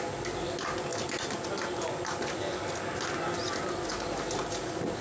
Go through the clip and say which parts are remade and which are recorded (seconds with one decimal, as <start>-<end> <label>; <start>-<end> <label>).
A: 0.0-5.0 recorded